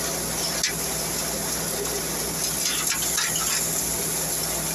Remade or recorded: recorded